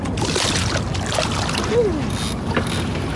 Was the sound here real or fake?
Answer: real